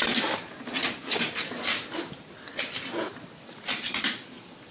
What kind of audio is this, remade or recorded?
remade